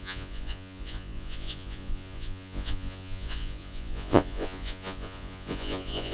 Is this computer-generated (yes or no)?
yes